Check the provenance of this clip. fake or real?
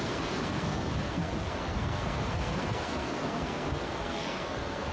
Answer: fake